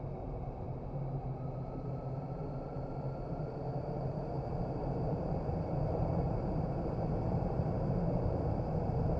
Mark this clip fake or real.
fake